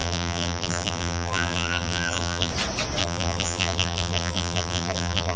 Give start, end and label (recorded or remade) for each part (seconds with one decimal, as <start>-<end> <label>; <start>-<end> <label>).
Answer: 0.0-2.5 remade; 2.5-3.0 recorded; 3.0-5.4 remade